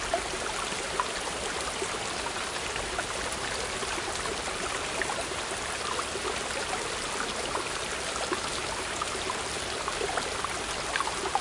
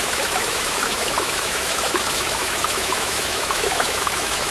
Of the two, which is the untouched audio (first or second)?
first